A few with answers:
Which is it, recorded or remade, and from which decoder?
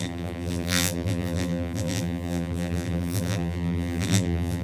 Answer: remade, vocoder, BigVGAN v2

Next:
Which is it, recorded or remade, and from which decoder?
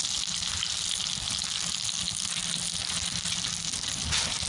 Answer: recorded